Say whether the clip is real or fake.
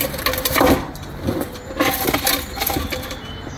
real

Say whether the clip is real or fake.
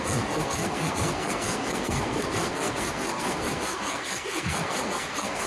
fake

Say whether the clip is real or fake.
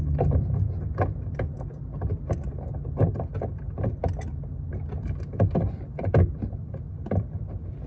real